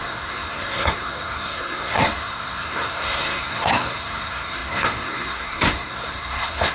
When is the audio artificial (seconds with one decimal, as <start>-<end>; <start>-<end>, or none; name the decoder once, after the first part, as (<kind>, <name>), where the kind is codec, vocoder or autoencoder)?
0.0-6.7 (codec, SNAC)